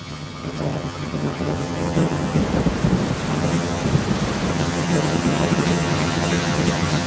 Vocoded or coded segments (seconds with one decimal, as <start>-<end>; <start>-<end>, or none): 0.0-2.4; 3.3-3.8; 4.5-7.1